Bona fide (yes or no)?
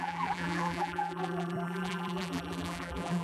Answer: no